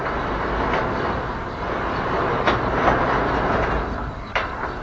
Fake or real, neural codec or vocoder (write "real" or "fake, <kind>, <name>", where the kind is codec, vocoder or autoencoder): real